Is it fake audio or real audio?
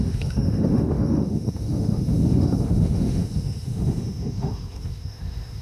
fake